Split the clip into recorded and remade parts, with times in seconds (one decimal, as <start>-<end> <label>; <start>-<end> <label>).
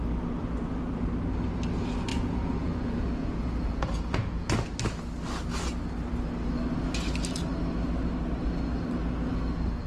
0.0-2.1 recorded; 2.1-4.5 remade; 4.5-9.9 recorded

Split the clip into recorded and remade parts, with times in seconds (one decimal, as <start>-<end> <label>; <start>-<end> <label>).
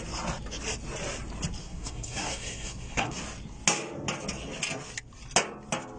0.0-1.6 recorded; 1.6-3.2 remade; 3.2-6.0 recorded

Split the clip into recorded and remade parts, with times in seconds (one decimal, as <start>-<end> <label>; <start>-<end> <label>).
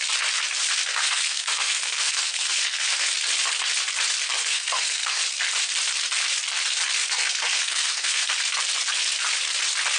0.0-1.0 recorded; 1.0-3.1 remade; 3.1-4.4 recorded; 4.4-5.2 remade; 5.2-7.0 recorded; 7.0-8.3 remade; 8.3-10.0 recorded